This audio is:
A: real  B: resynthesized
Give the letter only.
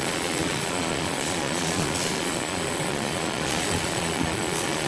B